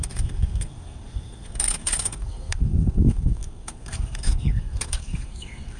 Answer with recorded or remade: remade